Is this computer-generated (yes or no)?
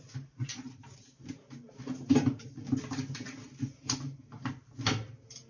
no